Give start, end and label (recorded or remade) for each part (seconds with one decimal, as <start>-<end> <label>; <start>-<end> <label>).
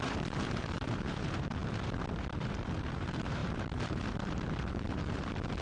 0.0-5.6 remade